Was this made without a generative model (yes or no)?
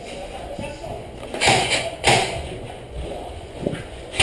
no